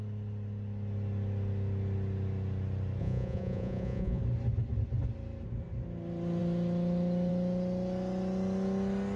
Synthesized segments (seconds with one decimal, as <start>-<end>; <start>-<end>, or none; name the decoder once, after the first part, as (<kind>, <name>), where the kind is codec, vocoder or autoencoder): 3.0-4.2 (vocoder, Vocos)